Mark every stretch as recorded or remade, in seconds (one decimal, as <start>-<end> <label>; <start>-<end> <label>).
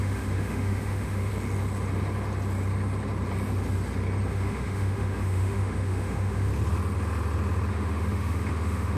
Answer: 0.0-1.3 remade; 1.3-4.3 recorded; 4.3-6.5 remade; 6.5-7.7 recorded; 7.7-9.0 remade